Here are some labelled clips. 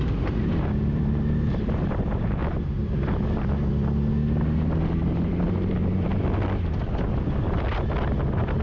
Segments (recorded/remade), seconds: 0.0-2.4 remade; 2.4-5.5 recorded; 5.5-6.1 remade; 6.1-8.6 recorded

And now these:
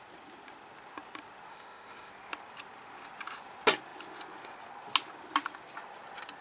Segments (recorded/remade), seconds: 0.0-1.5 recorded; 1.5-2.1 remade; 2.1-6.4 recorded

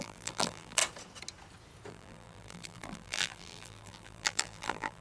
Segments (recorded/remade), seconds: 0.0-0.8 remade; 0.8-1.9 recorded; 1.9-5.0 remade

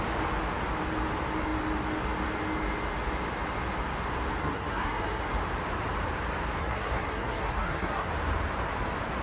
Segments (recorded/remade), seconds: 0.0-4.4 recorded; 4.4-5.2 remade; 5.2-6.6 recorded; 6.6-8.1 remade; 8.1-9.2 recorded

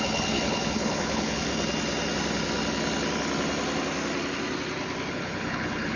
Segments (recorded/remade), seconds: 0.0-1.5 remade; 1.5-5.1 recorded; 5.1-6.0 remade

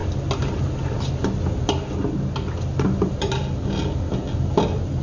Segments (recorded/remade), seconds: 0.0-3.0 recorded; 3.0-3.4 remade; 3.4-4.6 recorded; 4.6-5.0 remade

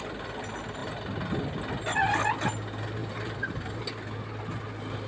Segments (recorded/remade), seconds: 0.0-3.0 recorded; 3.0-3.8 remade; 3.8-5.1 recorded

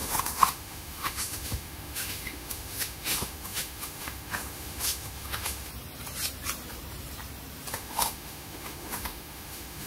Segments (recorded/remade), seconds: 0.0-5.7 remade; 5.7-7.7 recorded; 7.7-9.9 remade